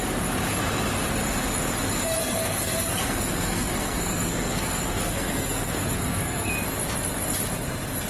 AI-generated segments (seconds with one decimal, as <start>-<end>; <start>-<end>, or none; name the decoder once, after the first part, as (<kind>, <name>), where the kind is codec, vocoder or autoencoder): 2.2-6.5 (codec, SNAC)